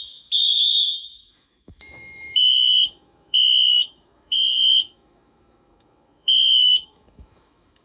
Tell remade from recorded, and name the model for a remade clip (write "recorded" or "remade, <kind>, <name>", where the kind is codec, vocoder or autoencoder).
remade, autoencoder, DAC-VAE